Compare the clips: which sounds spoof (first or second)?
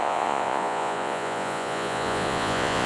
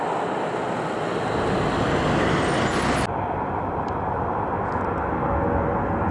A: first